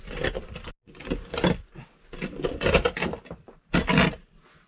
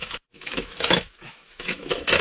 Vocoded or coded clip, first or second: second